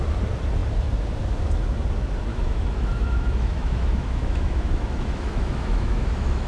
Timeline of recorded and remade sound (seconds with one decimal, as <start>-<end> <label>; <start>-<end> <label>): 0.0-2.3 recorded; 2.3-6.5 remade

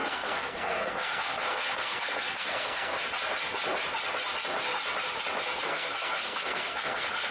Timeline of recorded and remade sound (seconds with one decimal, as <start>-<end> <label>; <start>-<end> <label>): 0.0-2.9 remade; 2.9-5.6 recorded; 5.6-7.3 remade

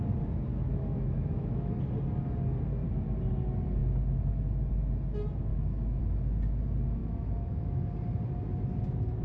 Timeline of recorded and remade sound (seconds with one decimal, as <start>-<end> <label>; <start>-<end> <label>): 0.0-0.5 recorded; 0.5-1.8 remade; 1.8-5.5 recorded; 5.5-6.0 remade; 6.0-7.0 recorded; 7.0-7.9 remade; 7.9-9.2 recorded

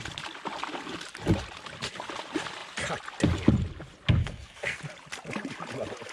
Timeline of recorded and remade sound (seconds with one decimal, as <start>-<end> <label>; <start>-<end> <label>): 0.0-4.2 recorded; 4.2-4.8 remade; 4.8-6.1 recorded

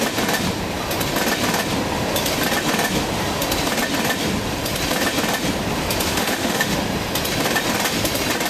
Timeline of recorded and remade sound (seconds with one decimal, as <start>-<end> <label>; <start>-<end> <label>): 0.0-6.1 recorded; 6.1-6.8 remade; 6.8-8.5 recorded

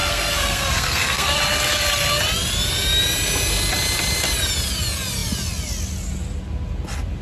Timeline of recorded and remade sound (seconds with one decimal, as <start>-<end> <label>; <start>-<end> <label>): 0.0-1.4 remade; 1.4-7.2 recorded

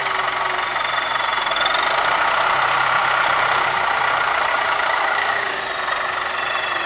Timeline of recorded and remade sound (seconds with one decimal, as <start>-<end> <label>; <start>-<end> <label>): 0.0-4.5 recorded; 4.5-5.6 remade; 5.6-6.9 recorded

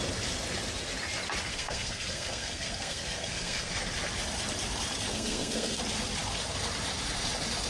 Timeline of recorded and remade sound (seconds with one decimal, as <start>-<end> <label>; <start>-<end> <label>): 0.0-1.5 recorded; 1.5-3.7 remade; 3.7-5.1 recorded; 5.1-5.8 remade; 5.8-7.7 recorded